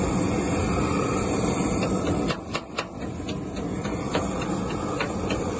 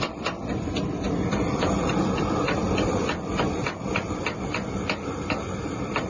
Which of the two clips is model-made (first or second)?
second